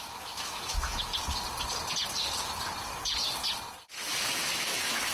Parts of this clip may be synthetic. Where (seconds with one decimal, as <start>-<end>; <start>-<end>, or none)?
0.0-1.1; 4.2-5.1